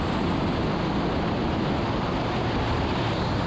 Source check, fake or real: real